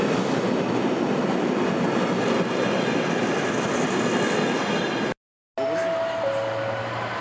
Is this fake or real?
real